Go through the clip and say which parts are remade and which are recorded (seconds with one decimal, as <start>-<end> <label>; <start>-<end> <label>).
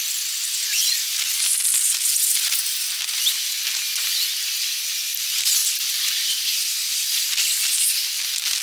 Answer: 0.0-7.4 recorded; 7.4-8.1 remade; 8.1-8.6 recorded